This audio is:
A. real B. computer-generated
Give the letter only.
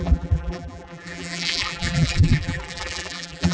B